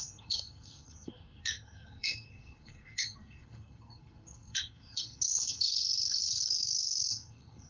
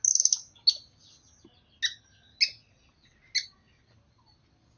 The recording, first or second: second